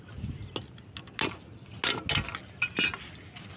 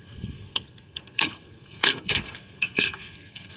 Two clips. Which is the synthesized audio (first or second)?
second